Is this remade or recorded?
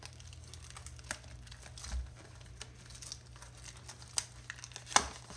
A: recorded